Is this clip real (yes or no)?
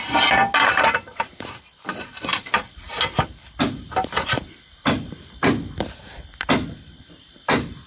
yes